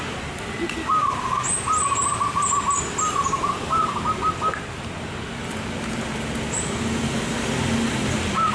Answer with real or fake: real